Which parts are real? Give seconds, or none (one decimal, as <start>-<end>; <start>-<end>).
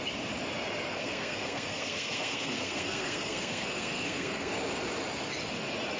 0.0-0.9; 4.5-6.0